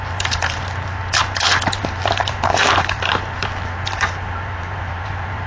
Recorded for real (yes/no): no